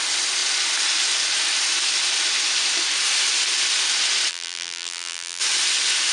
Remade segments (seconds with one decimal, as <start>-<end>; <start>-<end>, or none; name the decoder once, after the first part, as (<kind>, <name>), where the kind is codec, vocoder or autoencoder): 4.3-5.4 (vocoder, BigVGAN v2)